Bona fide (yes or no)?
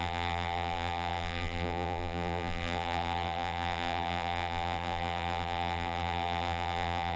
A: no